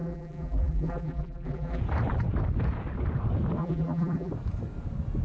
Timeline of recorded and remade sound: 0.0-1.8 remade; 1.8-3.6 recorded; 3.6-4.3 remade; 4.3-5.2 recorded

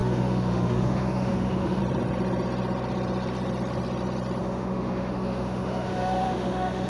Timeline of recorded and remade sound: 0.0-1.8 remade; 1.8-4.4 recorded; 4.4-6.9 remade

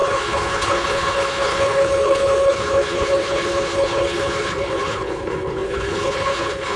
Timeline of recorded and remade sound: 0.0-6.8 remade

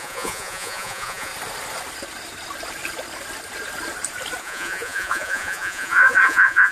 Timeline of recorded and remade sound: 0.0-1.3 remade; 1.3-4.4 recorded; 4.4-6.7 remade

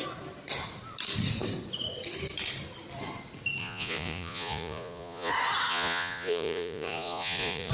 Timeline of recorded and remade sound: 0.0-3.6 recorded; 3.6-5.3 remade; 5.3-5.7 recorded; 5.7-7.7 remade

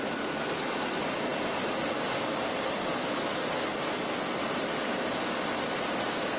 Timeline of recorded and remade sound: 0.0-6.4 recorded

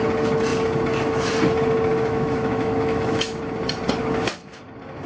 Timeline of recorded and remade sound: 0.0-1.9 recorded; 1.9-3.4 remade; 3.4-4.0 recorded; 4.0-4.6 remade; 4.6-5.1 recorded

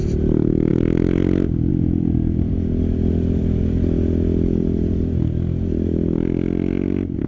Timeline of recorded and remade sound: 0.0-7.3 recorded